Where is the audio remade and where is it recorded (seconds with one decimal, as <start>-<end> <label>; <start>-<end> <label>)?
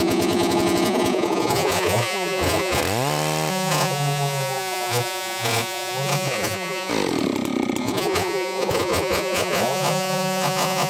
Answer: 0.0-2.8 remade; 2.8-3.5 recorded; 3.5-6.9 remade; 6.9-7.8 recorded; 7.8-10.9 remade